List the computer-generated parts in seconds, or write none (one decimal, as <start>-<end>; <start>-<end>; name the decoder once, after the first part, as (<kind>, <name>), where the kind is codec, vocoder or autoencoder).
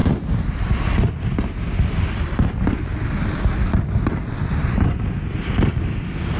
none